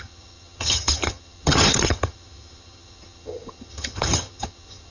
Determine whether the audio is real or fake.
fake